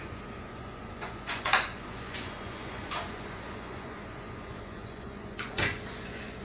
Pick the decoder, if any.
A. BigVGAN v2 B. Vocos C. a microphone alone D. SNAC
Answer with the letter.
B